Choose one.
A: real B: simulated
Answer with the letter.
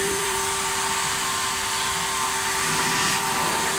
B